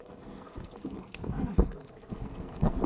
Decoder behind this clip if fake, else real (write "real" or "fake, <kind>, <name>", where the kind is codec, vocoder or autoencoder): fake, codec, SNAC